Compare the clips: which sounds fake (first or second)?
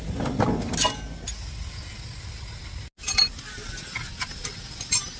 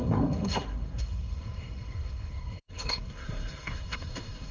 second